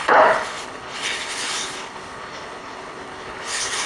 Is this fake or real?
fake